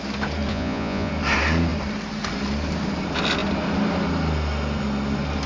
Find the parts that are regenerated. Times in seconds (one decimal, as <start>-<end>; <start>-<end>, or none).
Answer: 0.5-1.1